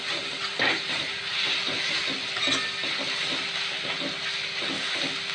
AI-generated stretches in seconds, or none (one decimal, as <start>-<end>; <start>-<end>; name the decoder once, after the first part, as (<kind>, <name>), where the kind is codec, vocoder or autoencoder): 0.5-1.2 (vocoder, BigVGAN v2)